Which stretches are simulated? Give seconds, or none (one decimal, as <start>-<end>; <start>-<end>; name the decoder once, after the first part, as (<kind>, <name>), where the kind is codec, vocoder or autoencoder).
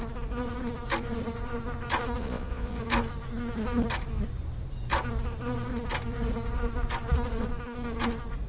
2.2-2.8 (vocoder, Vocos)